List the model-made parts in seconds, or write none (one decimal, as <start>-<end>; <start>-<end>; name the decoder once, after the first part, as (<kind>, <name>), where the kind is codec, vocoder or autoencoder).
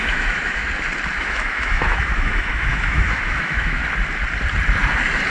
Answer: 0.0-0.6 (autoencoder, DAC-VAE); 1.2-3.8